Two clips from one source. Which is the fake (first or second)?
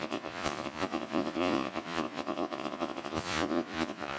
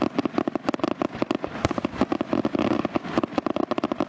first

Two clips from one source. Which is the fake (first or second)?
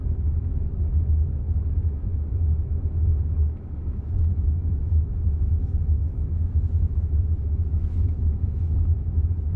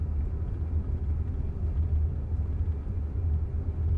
first